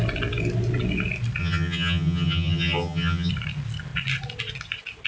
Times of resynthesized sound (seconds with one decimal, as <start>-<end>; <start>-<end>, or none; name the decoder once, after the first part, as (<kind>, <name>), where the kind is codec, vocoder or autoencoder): 1.4-3.3 (vocoder, HiFi-GAN)